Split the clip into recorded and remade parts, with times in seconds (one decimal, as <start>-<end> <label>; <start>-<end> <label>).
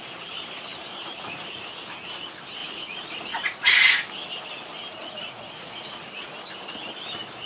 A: 0.0-2.6 recorded; 2.6-3.7 remade; 3.7-5.0 recorded; 5.0-6.0 remade; 6.0-7.5 recorded